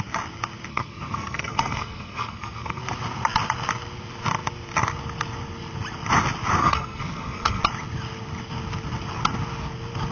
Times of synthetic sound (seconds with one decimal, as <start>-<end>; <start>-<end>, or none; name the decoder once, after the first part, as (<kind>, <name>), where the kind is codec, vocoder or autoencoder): 0.7-2.8 (codec, SNAC); 6.6-7.6